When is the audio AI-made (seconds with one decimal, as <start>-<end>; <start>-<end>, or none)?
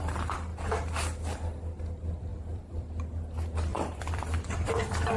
2.3-2.9; 3.7-5.2